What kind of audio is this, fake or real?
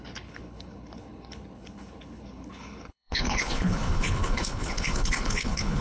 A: fake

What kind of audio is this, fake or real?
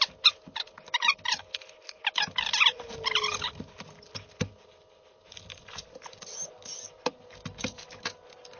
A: real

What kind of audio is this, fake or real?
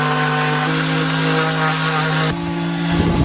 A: real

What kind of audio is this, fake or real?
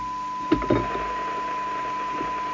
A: real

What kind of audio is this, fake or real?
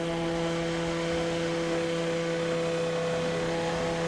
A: fake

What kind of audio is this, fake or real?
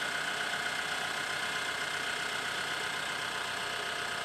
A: real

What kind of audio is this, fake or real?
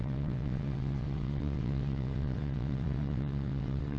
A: fake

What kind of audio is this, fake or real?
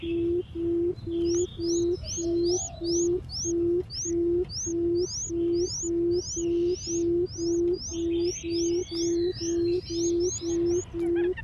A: real